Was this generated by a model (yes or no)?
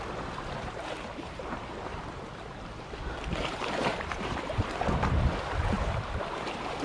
yes